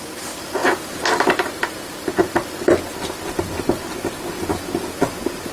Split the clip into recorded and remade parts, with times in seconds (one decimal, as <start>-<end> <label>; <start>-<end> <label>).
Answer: 0.0-0.6 remade; 0.6-1.2 recorded; 1.2-2.1 remade; 2.1-5.5 recorded